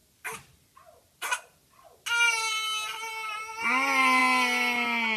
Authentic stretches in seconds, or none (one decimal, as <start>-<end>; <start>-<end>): 0.0-5.2